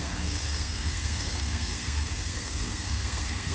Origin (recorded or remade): remade